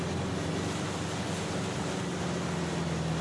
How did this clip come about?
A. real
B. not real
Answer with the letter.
A